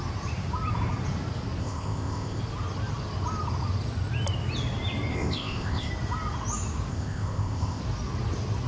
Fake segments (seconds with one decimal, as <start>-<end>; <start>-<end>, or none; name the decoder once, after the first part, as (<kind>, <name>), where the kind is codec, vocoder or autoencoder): 1.6-2.4 (codec, ZipCodec); 5.1-5.9; 6.9-7.8